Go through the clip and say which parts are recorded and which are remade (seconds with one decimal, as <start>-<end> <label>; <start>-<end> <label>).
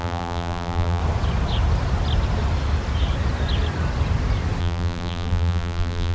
0.0-1.0 remade; 1.0-4.6 recorded; 4.6-6.1 remade